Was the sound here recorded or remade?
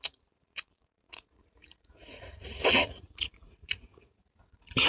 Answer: remade